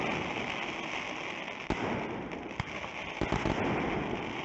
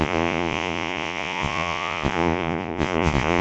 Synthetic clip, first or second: second